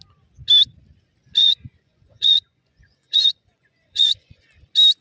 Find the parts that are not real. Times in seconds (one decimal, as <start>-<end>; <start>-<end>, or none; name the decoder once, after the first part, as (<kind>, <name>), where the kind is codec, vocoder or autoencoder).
1.4-4.4 (vocoder, Vocos)